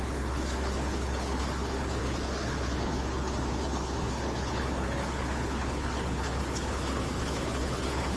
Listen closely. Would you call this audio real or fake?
fake